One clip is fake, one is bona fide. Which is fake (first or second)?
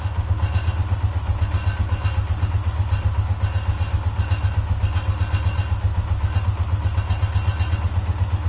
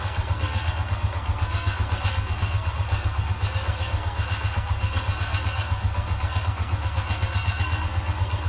second